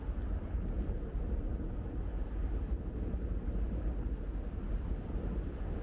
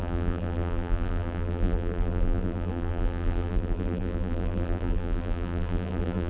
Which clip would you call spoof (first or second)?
second